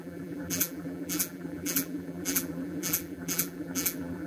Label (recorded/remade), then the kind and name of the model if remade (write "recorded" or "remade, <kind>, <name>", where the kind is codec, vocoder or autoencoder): remade, vocoder, BigVGAN v2